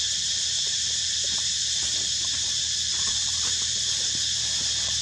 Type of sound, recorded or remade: remade